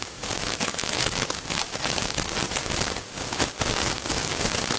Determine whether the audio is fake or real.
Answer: fake